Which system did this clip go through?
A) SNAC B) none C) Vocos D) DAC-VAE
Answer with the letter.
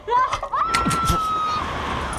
B